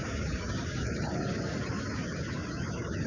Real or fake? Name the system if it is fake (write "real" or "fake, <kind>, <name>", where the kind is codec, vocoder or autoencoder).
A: fake, codec, DAC